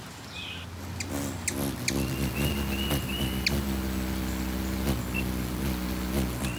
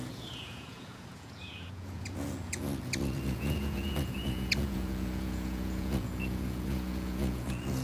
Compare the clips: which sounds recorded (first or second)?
first